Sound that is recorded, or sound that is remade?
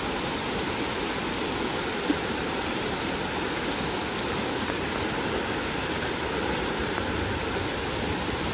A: recorded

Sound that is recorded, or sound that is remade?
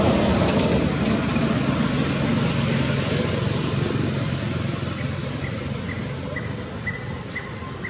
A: recorded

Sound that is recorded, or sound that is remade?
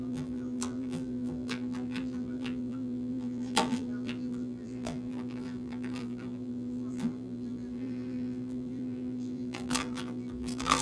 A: remade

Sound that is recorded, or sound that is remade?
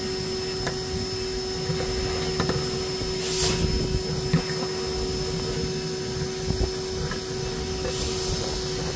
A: recorded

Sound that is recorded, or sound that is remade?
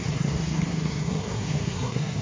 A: remade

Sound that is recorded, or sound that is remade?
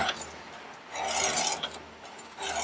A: recorded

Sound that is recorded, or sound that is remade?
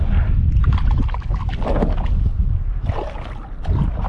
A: recorded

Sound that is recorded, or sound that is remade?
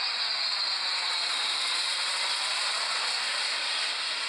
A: recorded